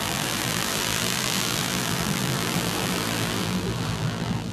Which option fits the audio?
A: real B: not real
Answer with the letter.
B